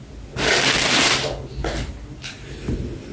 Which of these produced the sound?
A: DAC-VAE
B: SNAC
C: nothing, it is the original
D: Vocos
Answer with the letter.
C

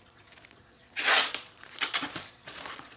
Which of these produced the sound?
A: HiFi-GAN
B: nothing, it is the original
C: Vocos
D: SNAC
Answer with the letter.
C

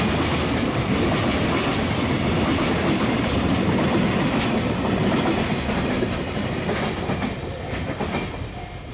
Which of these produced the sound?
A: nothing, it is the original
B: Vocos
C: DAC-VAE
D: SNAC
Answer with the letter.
A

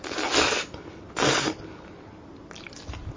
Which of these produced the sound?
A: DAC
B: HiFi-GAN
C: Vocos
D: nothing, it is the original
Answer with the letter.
D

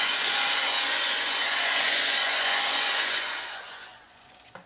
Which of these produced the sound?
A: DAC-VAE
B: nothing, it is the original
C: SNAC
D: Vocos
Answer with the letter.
D